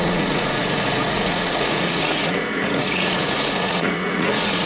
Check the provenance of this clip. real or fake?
fake